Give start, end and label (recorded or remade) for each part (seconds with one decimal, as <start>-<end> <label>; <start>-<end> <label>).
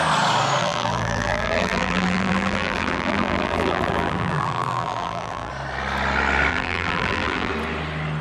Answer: 0.0-0.6 recorded; 0.6-5.5 remade; 5.5-6.5 recorded; 6.5-7.5 remade; 7.5-8.2 recorded